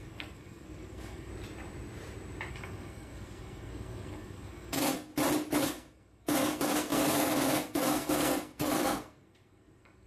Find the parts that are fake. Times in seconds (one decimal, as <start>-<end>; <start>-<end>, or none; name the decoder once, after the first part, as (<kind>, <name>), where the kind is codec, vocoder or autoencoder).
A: 0.0-1.3 (codec, SNAC); 2.5-5.1; 5.6-10.1

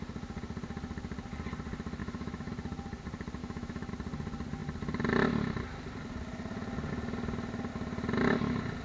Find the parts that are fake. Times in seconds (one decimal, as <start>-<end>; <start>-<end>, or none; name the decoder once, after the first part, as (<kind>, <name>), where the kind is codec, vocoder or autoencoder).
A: 2.0-2.5 (autoencoder, DAC-VAE); 3.4-3.9

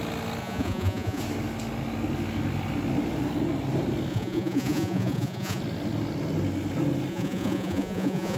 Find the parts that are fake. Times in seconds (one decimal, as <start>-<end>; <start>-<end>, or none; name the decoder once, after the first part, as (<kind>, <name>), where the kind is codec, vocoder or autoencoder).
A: 0.4-1.2 (vocoder, Vocos); 4.1-5.6; 7.1-8.4

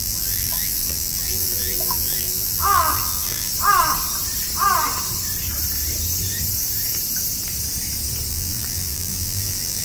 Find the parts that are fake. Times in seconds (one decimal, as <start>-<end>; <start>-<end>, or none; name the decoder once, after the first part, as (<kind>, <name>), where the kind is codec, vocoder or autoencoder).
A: 0.0-3.5 (vocoder, BigVGAN v2); 8.3-9.8

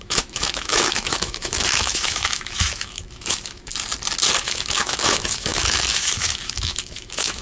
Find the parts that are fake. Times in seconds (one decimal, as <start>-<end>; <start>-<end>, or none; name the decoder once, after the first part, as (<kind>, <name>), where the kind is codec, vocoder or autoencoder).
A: 0.0-3.7 (autoencoder, DAC-VAE); 4.4-7.4

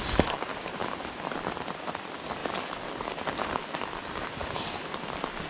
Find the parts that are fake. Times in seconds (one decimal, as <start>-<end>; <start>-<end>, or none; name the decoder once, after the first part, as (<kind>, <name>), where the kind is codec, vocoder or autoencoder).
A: 0.5-2.0 (vocoder, BigVGAN v2); 4.4-5.0

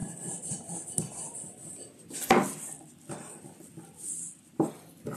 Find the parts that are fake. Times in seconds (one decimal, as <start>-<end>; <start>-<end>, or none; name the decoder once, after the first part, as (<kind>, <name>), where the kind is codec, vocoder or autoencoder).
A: none